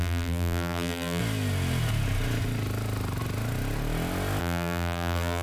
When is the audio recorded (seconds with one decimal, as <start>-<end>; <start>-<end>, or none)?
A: 1.2-4.4